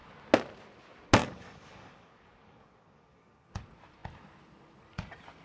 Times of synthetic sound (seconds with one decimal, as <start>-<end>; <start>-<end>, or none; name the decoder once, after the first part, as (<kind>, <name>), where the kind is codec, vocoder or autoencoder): 1.2-3.5 (codec, DAC)